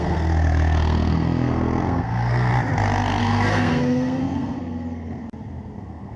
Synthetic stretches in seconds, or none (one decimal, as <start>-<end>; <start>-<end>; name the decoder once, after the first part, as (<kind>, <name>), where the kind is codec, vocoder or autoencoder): 0.0-2.5 (codec, SNAC); 3.2-5.2; 5.8-6.2

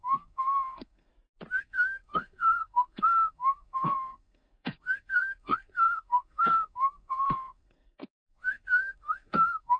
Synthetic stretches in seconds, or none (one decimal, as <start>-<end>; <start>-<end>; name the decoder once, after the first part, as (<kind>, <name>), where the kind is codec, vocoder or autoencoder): 0.0-1.1 (codec, SNAC); 1.6-9.8

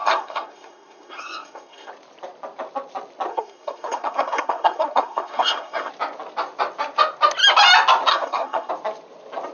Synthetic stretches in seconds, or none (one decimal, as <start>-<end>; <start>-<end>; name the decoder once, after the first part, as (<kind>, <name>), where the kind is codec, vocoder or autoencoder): 0.0-1.9 (codec, SNAC); 3.3-5.9; 8.1-8.7

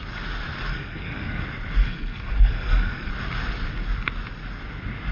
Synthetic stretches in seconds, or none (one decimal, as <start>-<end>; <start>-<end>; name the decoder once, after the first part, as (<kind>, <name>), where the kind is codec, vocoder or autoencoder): 0.7-1.4 (codec, SNAC); 1.8-3.1

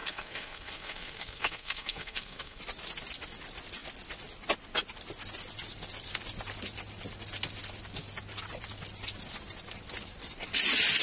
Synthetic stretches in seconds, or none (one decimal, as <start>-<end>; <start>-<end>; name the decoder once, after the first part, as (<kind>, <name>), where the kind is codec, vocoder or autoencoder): 0.0-2.6 (codec, SNAC)